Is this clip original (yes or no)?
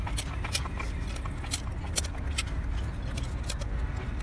yes